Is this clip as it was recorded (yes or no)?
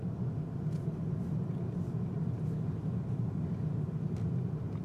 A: yes